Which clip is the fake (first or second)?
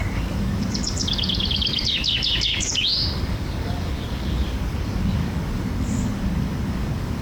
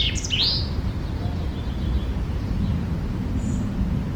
first